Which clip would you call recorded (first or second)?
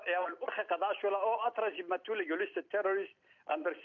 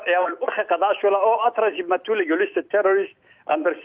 first